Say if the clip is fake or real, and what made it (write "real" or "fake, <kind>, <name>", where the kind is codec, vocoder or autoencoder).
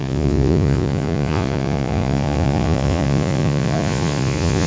fake, vocoder, Vocos